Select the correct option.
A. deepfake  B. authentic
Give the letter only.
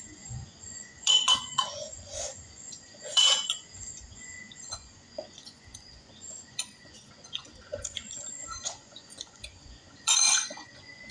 A